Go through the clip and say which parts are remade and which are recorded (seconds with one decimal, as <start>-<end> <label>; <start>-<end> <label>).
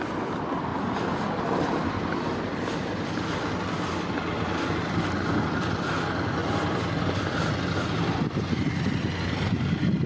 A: 0.0-0.7 recorded; 0.7-3.8 remade; 3.8-6.4 recorded; 6.4-7.5 remade; 7.5-10.1 recorded